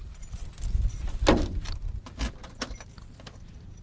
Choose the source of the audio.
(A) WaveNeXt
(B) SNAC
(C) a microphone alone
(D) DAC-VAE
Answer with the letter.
C